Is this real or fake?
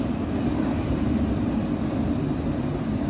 real